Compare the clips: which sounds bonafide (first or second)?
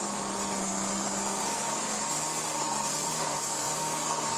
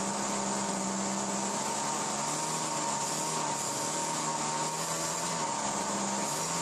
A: second